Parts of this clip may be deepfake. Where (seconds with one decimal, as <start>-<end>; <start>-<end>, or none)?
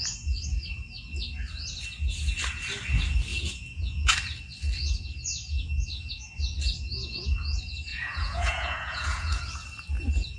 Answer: 3.3-4.1; 7.9-9.4